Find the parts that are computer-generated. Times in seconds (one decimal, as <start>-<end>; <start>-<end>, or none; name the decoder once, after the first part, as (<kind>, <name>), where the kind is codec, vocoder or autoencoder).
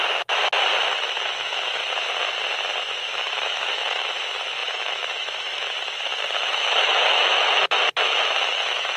0.9-1.8 (autoencoder, DAC-VAE); 2.9-9.0